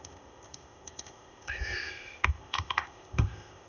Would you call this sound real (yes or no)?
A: no